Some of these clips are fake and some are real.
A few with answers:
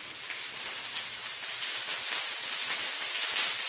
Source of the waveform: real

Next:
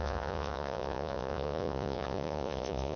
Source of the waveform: fake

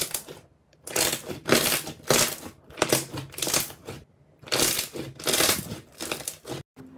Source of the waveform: real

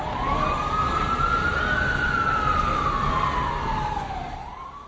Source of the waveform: real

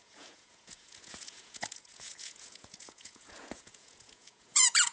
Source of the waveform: fake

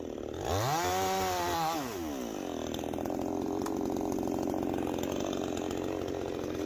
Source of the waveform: real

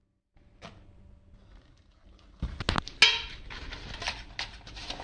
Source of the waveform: real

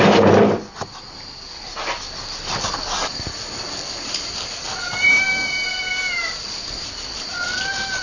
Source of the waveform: real